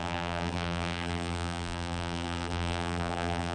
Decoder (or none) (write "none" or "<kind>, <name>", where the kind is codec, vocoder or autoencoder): vocoder, BigVGAN v2